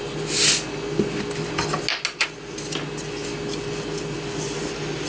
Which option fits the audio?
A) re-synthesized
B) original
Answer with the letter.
B